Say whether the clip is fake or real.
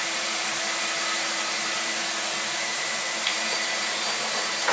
fake